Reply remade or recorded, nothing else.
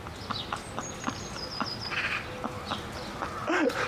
recorded